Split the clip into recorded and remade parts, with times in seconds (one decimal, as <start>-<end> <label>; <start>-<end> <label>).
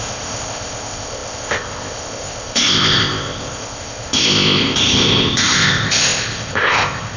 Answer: 0.0-7.2 remade